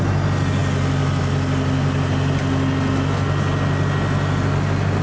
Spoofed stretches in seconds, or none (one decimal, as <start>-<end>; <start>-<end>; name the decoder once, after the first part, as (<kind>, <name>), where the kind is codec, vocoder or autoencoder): none